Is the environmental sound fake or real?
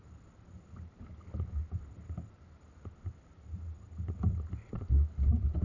real